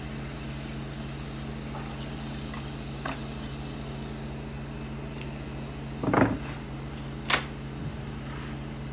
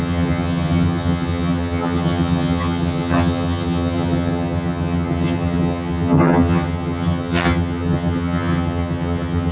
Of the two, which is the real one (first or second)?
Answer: first